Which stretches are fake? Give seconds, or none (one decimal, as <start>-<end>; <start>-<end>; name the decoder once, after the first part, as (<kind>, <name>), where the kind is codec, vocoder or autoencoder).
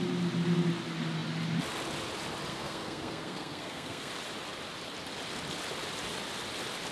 2.5-4.1 (codec, SNAC)